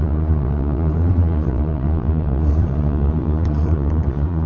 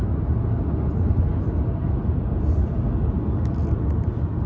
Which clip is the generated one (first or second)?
first